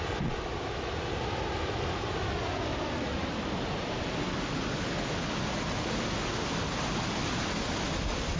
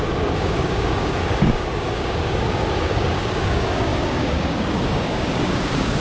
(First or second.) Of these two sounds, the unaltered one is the first